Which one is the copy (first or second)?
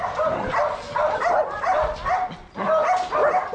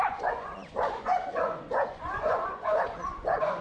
second